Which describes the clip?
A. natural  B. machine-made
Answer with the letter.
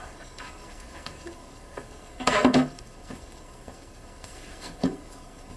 B